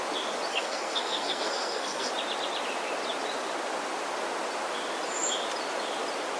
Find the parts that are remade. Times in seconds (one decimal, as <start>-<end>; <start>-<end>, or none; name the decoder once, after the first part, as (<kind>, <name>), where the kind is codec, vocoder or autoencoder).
0.5-2.1 (codec, SNAC)